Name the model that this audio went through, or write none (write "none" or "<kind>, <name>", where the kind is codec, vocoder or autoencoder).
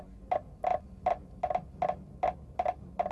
none